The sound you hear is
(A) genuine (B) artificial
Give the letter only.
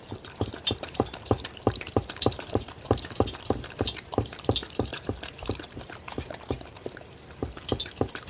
B